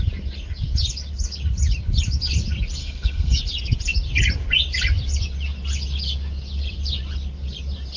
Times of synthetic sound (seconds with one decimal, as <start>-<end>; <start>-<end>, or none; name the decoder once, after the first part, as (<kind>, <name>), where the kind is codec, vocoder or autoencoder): 2.8-3.4 (codec, SNAC)